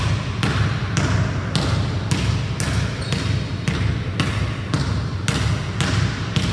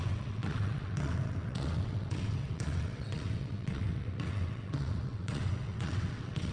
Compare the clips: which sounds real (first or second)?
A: first